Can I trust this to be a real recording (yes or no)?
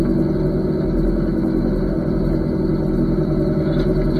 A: yes